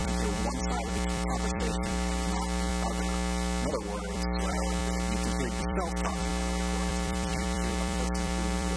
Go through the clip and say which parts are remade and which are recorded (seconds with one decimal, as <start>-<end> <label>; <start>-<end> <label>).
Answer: 0.0-2.7 remade; 2.7-3.7 recorded; 3.7-4.8 remade; 4.8-5.6 recorded; 5.6-6.3 remade; 6.3-6.9 recorded; 6.9-8.8 remade